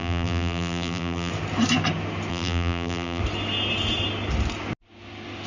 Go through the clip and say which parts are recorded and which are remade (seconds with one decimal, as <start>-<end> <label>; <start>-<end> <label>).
0.0-1.3 remade; 1.3-2.3 recorded; 2.3-3.2 remade; 3.2-5.5 recorded